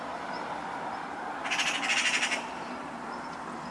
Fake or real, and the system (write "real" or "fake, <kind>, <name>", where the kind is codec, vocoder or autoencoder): real